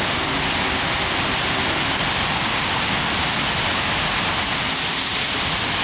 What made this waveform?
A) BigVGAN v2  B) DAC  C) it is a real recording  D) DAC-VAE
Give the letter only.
C